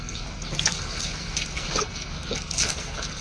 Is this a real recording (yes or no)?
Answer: no